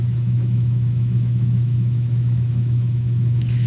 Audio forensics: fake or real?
fake